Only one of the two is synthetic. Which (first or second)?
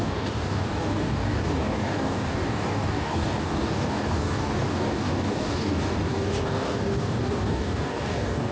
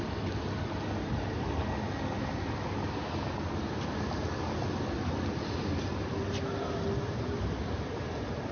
first